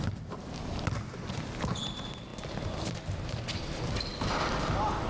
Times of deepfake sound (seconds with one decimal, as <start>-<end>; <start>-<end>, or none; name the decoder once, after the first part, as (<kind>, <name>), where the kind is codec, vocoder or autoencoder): none